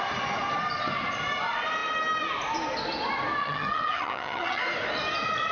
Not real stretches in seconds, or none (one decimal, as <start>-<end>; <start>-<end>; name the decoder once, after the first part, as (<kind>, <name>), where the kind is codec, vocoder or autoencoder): 3.4-4.6 (vocoder, HiFi-GAN)